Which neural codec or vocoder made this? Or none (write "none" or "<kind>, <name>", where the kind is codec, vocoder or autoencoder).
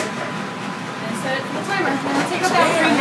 none